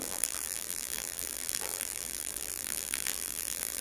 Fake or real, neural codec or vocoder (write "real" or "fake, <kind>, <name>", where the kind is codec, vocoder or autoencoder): fake, vocoder, BigVGAN v2